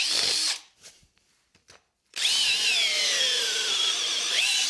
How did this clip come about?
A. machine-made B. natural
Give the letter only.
B